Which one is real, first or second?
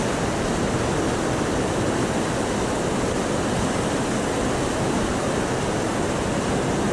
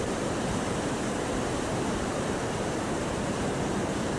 first